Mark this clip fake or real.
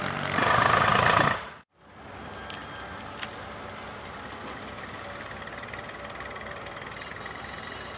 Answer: fake